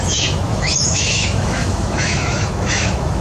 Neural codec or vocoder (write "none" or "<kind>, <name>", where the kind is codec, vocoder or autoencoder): autoencoder, DAC-VAE